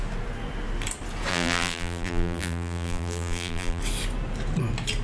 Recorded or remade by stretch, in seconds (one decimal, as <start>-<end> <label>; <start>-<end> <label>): 0.0-1.3 recorded; 1.3-3.8 remade; 3.8-5.0 recorded